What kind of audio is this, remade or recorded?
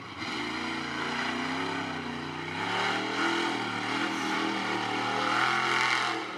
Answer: recorded